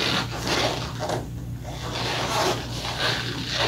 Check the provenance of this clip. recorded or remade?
recorded